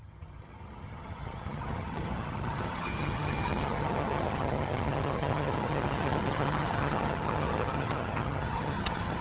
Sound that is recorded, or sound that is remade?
remade